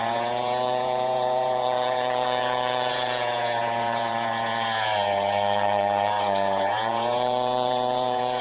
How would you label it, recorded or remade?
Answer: remade